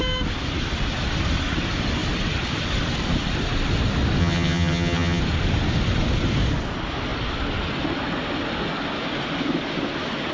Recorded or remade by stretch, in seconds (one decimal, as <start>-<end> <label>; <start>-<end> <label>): 0.0-4.2 recorded; 4.2-5.2 remade; 5.2-10.3 recorded